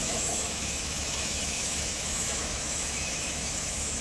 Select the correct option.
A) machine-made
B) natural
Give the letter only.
A